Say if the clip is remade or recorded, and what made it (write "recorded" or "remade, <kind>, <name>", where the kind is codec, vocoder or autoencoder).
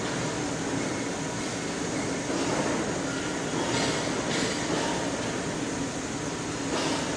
recorded